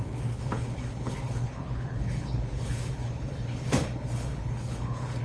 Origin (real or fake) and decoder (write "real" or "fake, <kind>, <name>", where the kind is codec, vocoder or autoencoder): fake, codec, HILCodec